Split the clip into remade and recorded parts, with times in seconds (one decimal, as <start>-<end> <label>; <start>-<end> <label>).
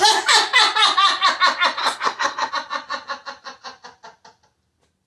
0.0-1.8 recorded; 1.8-2.5 remade; 2.5-5.1 recorded